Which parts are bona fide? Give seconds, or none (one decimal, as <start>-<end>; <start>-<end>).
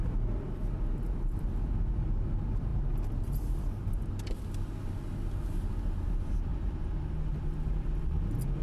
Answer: 0.0-8.6